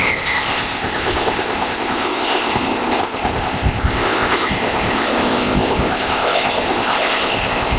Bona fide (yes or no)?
no